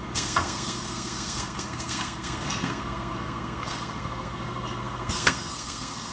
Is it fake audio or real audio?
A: fake